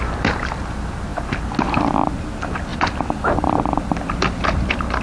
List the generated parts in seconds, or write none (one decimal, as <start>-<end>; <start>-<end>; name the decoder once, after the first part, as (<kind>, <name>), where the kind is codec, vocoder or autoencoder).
2.7-5.0 (vocoder, BigVGAN v2)